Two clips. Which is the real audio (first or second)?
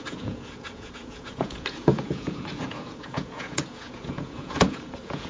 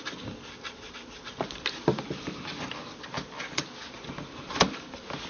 second